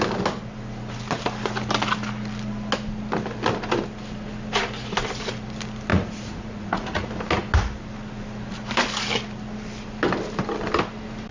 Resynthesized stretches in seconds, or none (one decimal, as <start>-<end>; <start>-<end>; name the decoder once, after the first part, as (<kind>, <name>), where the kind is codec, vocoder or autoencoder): 5.9-7.1 (vocoder, Vocos)